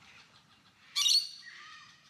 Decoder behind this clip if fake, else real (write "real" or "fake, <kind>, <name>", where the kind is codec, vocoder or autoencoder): fake, vocoder, BigVGAN v2